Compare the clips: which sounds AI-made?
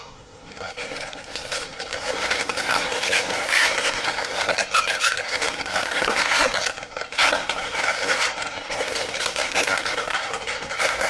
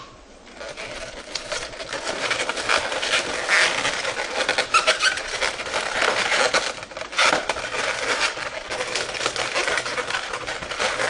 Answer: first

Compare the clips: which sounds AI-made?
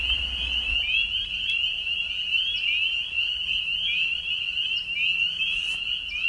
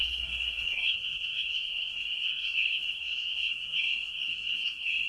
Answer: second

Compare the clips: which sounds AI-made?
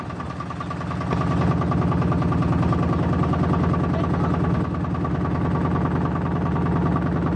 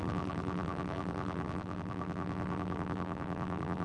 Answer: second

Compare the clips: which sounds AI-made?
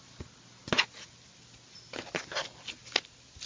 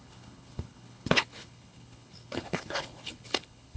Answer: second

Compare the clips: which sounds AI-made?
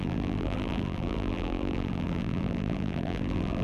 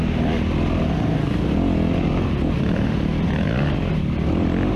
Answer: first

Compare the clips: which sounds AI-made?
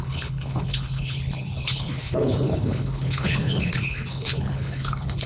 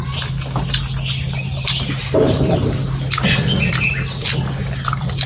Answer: first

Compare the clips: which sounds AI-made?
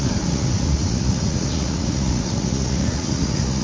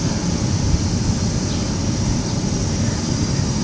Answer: first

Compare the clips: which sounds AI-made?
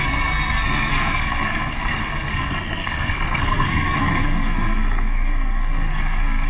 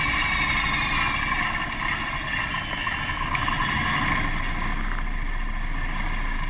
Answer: first